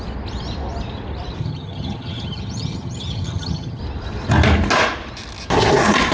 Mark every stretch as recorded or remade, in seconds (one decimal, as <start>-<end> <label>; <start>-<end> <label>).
0.0-1.4 recorded; 1.4-3.8 remade; 3.8-6.1 recorded